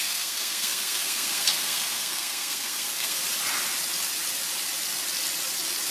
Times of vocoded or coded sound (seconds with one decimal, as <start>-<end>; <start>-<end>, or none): 0.0-3.2

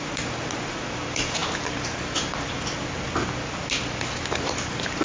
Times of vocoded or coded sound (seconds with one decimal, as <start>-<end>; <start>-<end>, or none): none

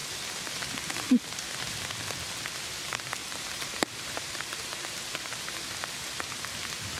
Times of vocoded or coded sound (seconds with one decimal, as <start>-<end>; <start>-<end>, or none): 3.2-5.5

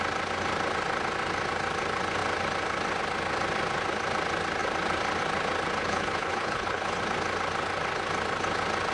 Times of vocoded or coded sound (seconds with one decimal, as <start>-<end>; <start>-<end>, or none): 5.8-7.0

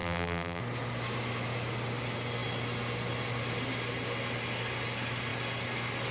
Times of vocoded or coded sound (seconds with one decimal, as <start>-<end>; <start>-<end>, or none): 0.0-0.6

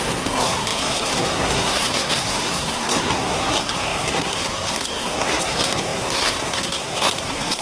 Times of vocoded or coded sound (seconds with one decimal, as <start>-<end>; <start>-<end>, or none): 0.0-7.6

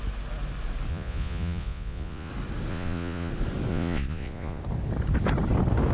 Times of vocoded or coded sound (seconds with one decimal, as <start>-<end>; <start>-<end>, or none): 0.9-2.3; 2.7-3.3; 3.7-4.6

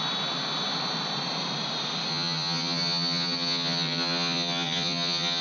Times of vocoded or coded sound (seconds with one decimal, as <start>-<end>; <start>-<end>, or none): 2.1-5.4